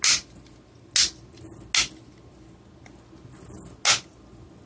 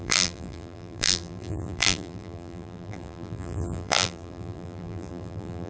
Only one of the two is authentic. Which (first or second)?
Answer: first